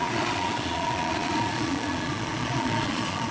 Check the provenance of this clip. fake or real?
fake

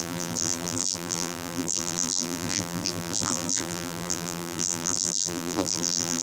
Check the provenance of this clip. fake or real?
fake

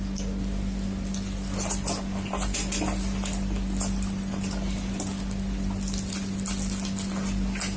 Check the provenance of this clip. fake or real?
real